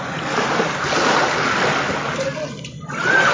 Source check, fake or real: real